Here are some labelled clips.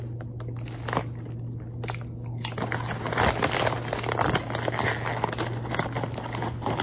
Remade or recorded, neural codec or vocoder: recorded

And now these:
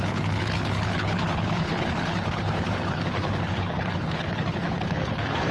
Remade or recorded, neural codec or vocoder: remade, codec, HILCodec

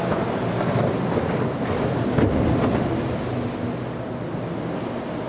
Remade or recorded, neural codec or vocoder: recorded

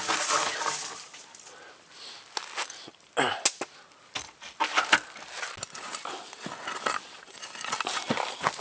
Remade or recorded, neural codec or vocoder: recorded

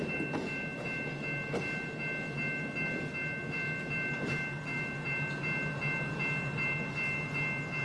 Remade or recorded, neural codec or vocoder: recorded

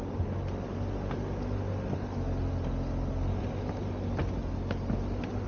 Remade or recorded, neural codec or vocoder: recorded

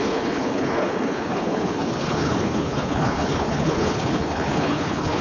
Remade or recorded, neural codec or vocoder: remade, codec, HILCodec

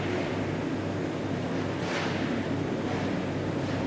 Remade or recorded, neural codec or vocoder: recorded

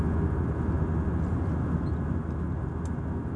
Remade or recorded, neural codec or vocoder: recorded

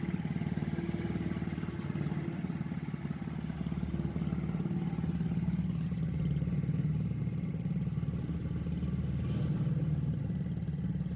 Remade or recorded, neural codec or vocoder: recorded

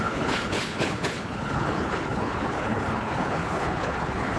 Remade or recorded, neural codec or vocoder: remade, codec, HILCodec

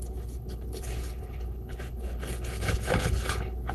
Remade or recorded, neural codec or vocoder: remade, codec, HILCodec